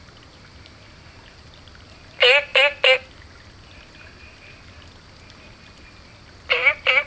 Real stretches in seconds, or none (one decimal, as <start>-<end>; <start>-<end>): 0.0-7.1